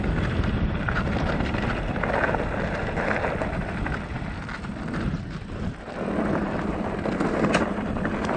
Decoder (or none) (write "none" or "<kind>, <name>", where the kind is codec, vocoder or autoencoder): none